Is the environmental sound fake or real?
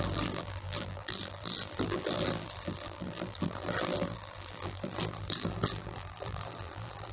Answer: fake